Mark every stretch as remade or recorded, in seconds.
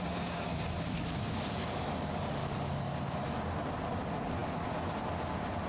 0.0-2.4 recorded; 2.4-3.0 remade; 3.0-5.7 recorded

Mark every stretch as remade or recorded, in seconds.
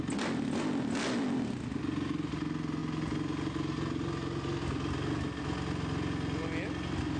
0.0-7.2 recorded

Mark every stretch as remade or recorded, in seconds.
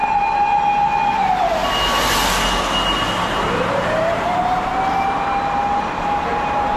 0.0-3.3 recorded; 3.3-4.7 remade; 4.7-5.7 recorded; 5.7-6.8 remade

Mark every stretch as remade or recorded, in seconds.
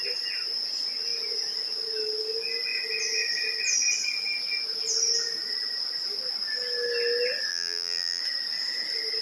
0.0-7.5 recorded; 7.5-8.2 remade; 8.2-9.2 recorded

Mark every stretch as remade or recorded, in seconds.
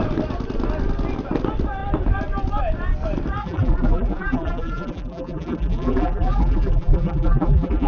0.0-3.4 recorded; 3.4-7.9 remade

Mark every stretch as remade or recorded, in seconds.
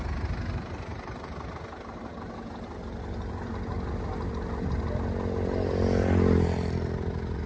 0.0-0.9 recorded; 0.9-1.5 remade; 1.5-7.5 recorded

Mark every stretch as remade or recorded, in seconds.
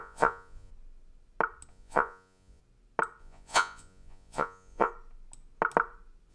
0.0-0.7 remade; 0.7-1.7 recorded; 1.7-2.6 remade; 2.6-3.2 recorded; 3.2-4.9 remade; 4.9-6.3 recorded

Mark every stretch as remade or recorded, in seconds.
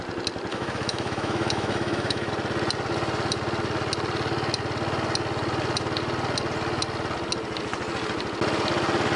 0.0-0.5 recorded; 0.5-2.3 remade; 2.3-9.2 recorded